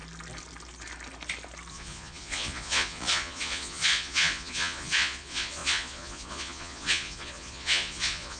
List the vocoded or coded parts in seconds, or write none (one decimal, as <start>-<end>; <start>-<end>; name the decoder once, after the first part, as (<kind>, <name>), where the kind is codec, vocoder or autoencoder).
1.7-8.4 (vocoder, Vocos)